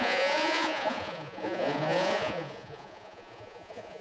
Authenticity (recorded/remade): remade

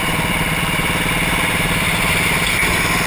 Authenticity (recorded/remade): remade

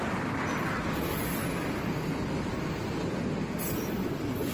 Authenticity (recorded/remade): recorded